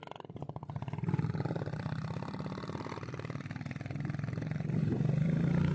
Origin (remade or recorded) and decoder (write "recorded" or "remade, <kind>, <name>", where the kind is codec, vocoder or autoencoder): remade, vocoder, BigVGAN v2